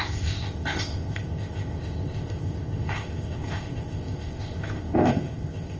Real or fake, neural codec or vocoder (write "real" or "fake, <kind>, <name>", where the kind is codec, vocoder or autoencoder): fake, codec, ZipCodec